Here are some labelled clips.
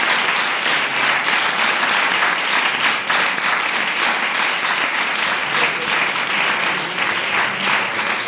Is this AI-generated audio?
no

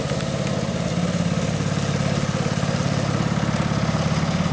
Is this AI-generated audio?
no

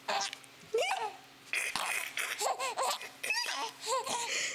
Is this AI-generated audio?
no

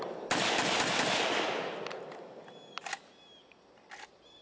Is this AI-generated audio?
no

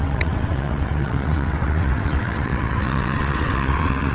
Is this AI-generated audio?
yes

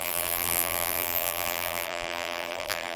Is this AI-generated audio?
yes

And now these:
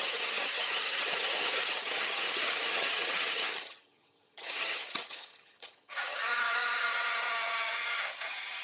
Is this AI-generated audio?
yes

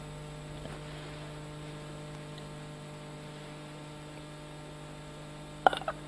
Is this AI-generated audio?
no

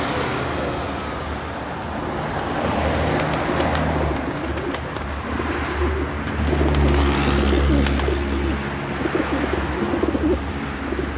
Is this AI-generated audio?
no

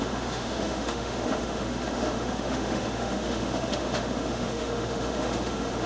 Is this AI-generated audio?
yes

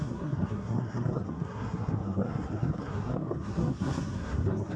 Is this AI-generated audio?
yes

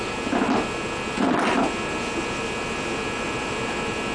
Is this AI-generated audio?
no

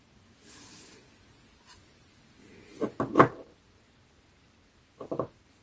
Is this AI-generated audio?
no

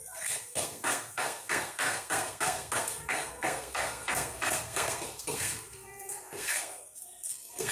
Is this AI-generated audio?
yes